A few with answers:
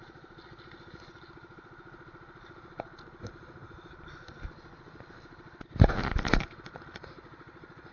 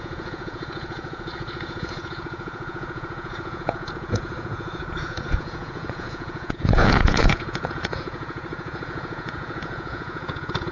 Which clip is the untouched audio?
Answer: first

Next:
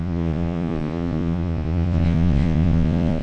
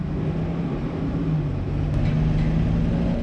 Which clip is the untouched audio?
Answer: second